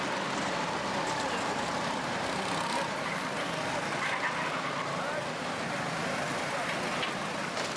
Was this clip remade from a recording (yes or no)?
no